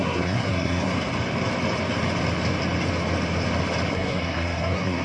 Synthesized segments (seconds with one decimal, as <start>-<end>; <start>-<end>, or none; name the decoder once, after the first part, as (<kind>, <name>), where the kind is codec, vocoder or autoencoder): 0.0-0.9 (codec, SNAC); 3.9-5.0